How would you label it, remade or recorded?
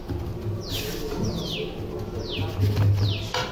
recorded